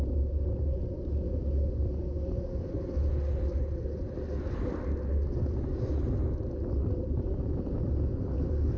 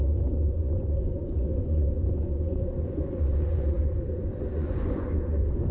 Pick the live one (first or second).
first